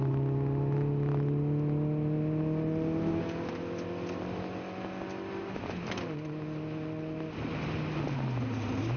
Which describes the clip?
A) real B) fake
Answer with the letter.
A